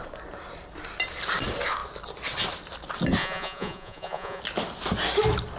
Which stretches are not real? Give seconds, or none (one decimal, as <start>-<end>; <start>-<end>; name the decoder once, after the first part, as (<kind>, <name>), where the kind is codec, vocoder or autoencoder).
3.2-4.4 (vocoder, Vocos)